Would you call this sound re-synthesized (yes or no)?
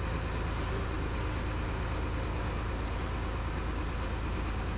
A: no